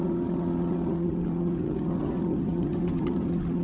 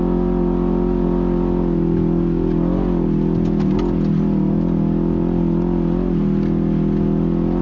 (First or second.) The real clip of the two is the second